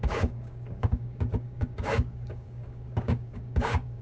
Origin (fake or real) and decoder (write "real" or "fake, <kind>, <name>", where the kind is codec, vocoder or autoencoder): fake, codec, DAC